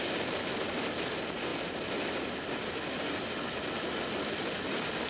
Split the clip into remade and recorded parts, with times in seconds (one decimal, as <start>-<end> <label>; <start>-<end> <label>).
0.0-5.1 recorded